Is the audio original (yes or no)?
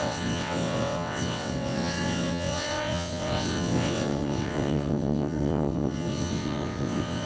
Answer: no